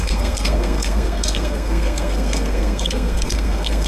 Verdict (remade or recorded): remade